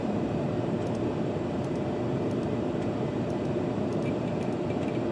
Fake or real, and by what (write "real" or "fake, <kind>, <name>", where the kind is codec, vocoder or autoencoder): fake, vocoder, BigVGAN v2